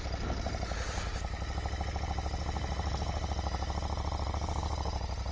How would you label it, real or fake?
real